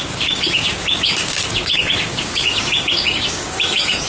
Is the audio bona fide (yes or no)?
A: no